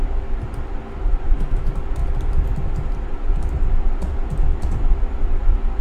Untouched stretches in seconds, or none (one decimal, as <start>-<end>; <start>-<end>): 0.0-5.8

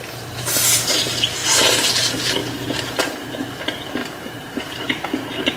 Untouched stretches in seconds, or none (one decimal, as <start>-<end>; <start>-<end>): 0.0-1.4; 1.9-2.4; 3.6-4.0; 5.0-5.6

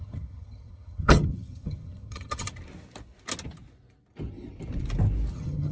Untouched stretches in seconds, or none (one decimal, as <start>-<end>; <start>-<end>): 2.5-5.3

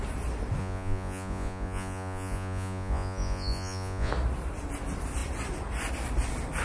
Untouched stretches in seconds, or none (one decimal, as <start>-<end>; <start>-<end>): 0.0-0.6; 4.1-6.6

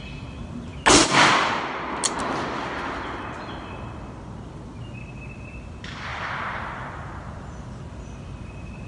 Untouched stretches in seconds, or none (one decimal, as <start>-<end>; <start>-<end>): 0.0-8.9